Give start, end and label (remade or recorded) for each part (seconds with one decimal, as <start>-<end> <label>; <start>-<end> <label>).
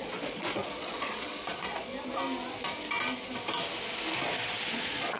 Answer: 0.0-1.9 remade; 1.9-4.7 recorded; 4.7-5.2 remade